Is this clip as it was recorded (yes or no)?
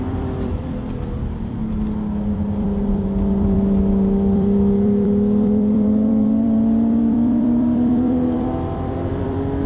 no